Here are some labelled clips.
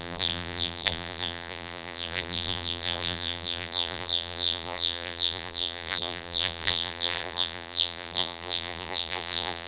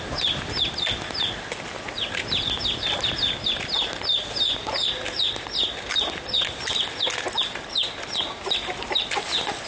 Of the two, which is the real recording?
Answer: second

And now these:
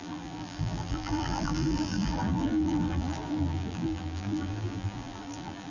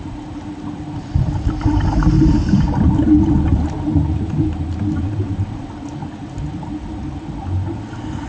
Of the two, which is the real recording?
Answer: second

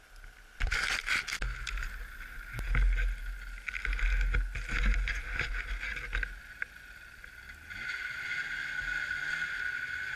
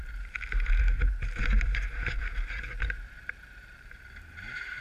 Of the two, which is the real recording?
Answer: first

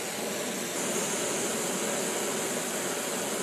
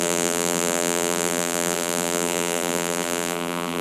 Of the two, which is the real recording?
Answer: first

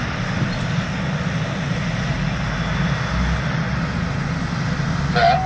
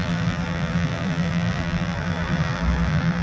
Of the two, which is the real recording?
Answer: first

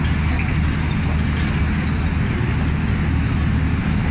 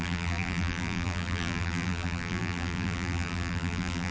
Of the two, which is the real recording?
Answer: first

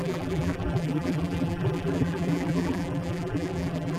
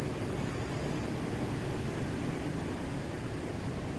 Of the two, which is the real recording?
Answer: second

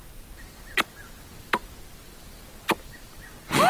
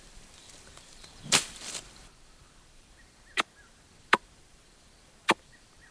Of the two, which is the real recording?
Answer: first